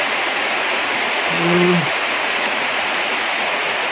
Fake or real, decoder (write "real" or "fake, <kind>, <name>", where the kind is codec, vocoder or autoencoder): fake, vocoder, Vocos